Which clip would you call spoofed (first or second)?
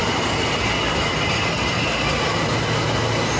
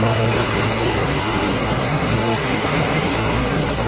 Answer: second